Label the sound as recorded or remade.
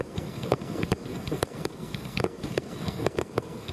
remade